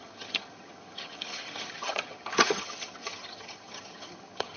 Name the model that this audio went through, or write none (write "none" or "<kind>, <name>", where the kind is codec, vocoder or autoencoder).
vocoder, HiFi-GAN